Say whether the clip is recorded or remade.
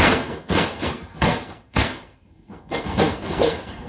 remade